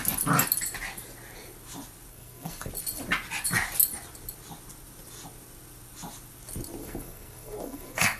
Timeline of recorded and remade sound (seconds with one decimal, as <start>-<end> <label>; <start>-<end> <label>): 0.0-2.1 recorded; 2.1-2.7 remade; 2.7-6.8 recorded; 6.8-8.2 remade